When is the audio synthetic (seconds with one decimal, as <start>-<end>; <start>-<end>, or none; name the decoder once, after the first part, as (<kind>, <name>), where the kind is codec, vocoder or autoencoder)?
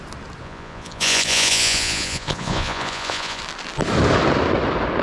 0.4-3.4 (vocoder, Vocos)